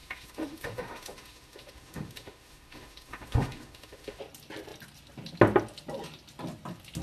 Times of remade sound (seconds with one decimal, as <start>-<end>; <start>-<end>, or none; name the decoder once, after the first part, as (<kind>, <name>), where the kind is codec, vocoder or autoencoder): 0.0-4.2 (autoencoder, DAC-VAE)